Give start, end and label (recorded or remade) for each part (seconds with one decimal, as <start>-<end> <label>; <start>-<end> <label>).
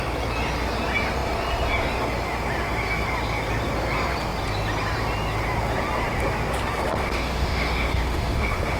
0.0-7.0 recorded; 7.0-8.8 remade